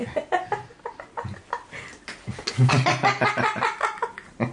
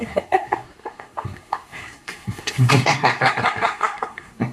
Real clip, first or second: first